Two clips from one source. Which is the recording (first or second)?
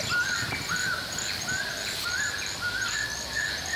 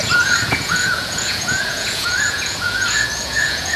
first